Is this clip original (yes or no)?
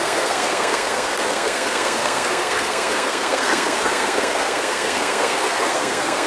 no